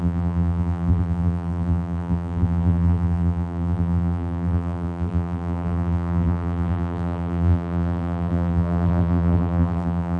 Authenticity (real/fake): fake